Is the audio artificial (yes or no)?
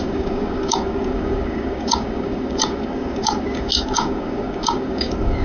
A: yes